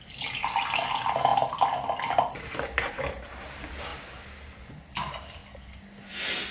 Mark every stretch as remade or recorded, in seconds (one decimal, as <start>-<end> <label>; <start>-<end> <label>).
0.0-6.5 recorded